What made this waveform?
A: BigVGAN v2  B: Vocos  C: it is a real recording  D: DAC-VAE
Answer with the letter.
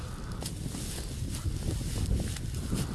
C